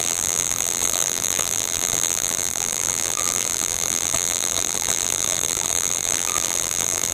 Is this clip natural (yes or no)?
no